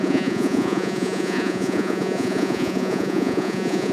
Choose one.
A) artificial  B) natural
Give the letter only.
A